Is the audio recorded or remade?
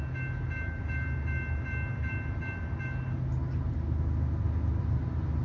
recorded